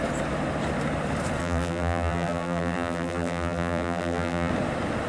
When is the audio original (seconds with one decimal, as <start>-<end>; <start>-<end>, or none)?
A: 0.0-1.4; 4.5-5.1